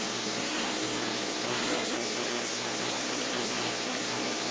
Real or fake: fake